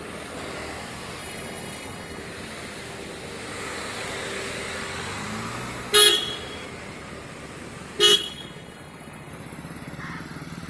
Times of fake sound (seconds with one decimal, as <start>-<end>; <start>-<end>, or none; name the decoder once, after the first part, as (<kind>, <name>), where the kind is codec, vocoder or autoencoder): 1.2-2.2 (codec, HILCodec); 8.1-9.3